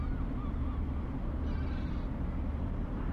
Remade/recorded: recorded